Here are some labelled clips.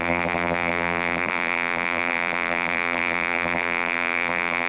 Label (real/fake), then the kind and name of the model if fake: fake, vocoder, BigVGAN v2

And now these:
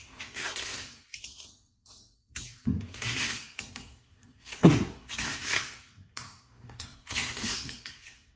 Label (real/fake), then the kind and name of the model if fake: fake, codec, SNAC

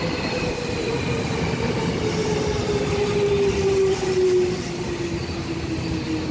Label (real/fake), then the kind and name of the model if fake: real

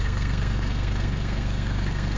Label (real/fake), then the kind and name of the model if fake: fake, codec, SNAC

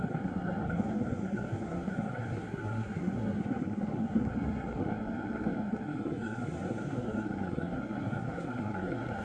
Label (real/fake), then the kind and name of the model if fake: fake, codec, SNAC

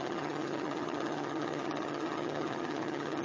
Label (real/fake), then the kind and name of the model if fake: fake, vocoder, HiFi-GAN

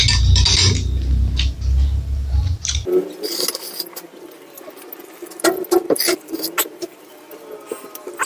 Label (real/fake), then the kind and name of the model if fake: real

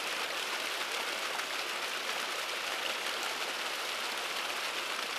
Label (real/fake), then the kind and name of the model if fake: real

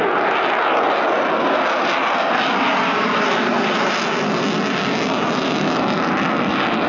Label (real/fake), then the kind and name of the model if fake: real